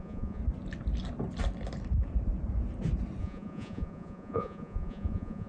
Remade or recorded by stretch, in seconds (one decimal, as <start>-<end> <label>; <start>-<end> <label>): 0.0-0.4 remade; 0.4-3.2 recorded; 3.2-5.5 remade